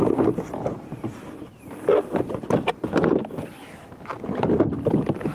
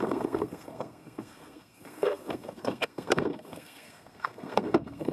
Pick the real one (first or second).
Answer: first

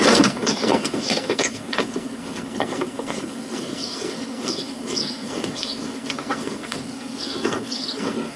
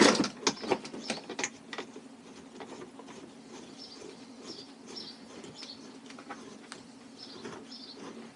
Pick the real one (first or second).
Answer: second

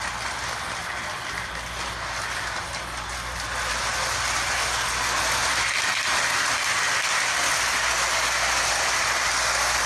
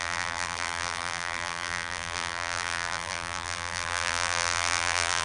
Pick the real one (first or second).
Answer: first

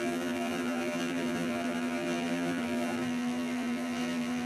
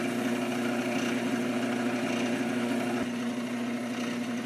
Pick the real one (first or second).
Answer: second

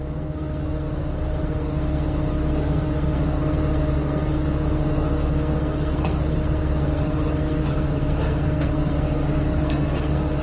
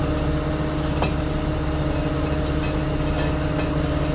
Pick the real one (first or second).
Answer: second